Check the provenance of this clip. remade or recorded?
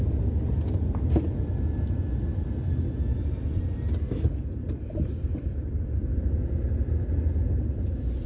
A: recorded